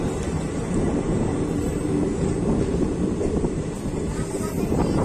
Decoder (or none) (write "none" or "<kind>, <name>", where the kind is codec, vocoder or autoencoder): none